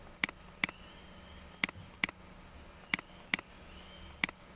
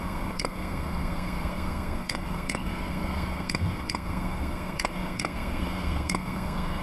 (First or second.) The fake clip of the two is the second